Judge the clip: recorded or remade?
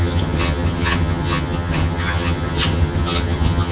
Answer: remade